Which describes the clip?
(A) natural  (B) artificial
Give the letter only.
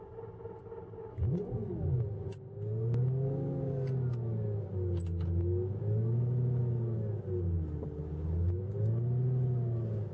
A